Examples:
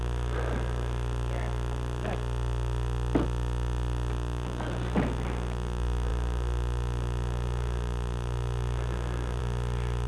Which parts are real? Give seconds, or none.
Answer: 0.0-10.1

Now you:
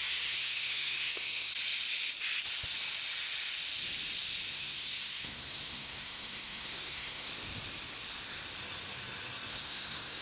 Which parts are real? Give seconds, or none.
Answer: 1.5-4.5; 7.3-9.5